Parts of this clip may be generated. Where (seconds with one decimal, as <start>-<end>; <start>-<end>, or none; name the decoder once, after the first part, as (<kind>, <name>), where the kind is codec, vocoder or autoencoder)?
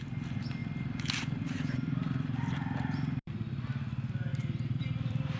0.6-3.3 (vocoder, BigVGAN v2); 4.3-5.4